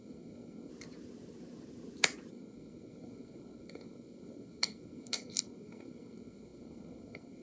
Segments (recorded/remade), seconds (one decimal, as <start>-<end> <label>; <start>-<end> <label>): 0.0-0.7 remade; 0.7-2.3 recorded; 2.3-7.4 remade